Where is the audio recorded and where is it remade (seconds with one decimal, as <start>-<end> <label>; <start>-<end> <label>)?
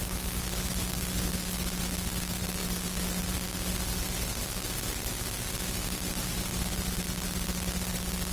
0.0-8.3 recorded